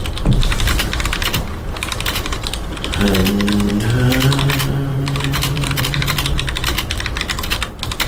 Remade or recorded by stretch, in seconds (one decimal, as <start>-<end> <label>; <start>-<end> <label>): 0.0-2.5 remade; 2.5-4.9 recorded; 4.9-5.8 remade; 5.8-8.1 recorded